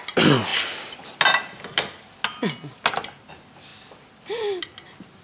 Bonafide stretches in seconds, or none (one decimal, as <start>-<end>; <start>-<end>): 0.0-5.2